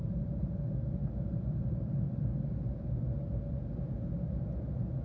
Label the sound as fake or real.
real